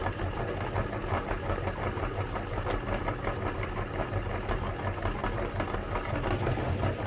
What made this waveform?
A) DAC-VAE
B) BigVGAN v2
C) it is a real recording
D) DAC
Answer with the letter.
C